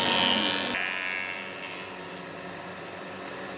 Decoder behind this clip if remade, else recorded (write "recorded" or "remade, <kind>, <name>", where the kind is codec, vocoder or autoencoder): recorded